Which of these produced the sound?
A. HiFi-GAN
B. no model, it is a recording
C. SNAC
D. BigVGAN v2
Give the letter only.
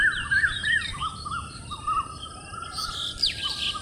D